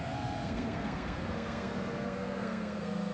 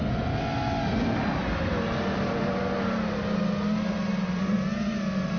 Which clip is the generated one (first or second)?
first